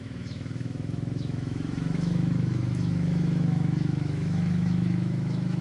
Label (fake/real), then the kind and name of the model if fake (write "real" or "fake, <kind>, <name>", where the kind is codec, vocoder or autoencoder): fake, autoencoder, DAC-VAE